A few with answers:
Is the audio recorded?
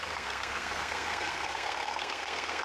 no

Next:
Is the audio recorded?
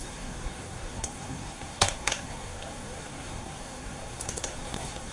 no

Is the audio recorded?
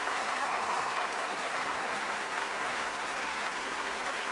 no